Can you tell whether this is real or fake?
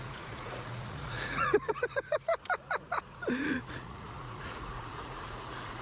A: fake